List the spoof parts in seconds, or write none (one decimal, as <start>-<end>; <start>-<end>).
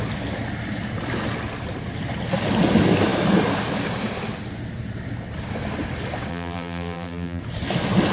6.3-7.4